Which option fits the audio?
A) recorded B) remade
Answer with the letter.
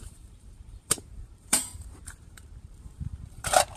B